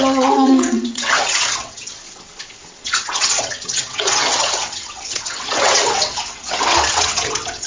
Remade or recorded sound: remade